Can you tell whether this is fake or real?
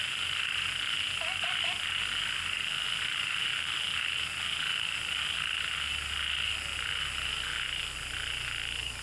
real